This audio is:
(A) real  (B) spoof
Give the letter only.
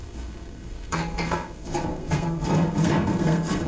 B